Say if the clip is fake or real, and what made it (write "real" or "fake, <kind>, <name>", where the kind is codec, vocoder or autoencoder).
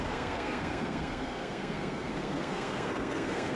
fake, codec, SNAC